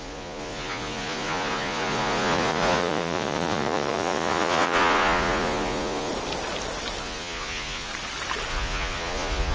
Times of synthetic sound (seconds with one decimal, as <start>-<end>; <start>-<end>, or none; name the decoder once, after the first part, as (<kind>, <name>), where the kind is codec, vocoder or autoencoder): 0.0-6.1 (vocoder, Vocos); 7.0-7.9; 8.5-9.5